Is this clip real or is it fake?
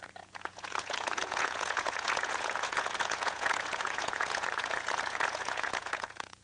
fake